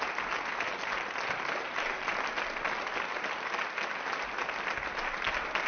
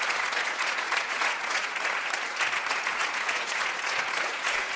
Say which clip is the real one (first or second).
first